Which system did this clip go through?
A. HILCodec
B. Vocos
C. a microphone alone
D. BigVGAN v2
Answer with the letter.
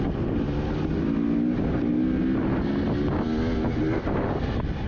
C